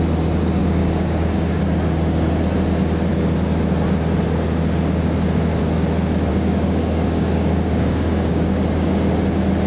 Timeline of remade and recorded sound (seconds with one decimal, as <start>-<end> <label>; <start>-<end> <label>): 0.0-0.6 recorded; 0.6-1.6 remade; 1.6-6.3 recorded; 6.3-8.9 remade; 8.9-9.7 recorded